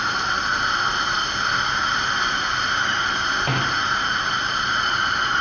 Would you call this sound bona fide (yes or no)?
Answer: yes